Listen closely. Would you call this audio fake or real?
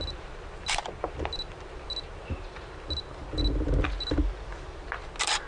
real